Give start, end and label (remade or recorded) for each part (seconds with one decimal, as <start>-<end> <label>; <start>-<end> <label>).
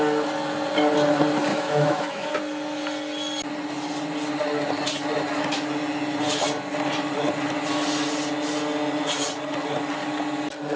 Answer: 0.0-1.5 recorded; 1.5-2.3 remade; 2.3-10.8 recorded